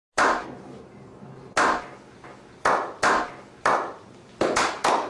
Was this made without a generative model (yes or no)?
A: yes